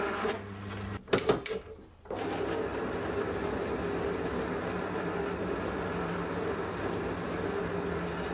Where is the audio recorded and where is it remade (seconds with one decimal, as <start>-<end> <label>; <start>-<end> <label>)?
0.0-8.3 recorded